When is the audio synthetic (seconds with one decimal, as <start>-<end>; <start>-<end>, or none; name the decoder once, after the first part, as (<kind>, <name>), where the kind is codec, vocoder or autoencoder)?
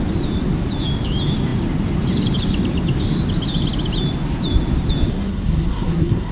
5.1-6.3 (codec, SNAC)